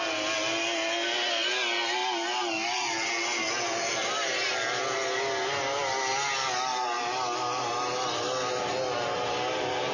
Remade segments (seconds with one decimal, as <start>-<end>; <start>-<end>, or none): none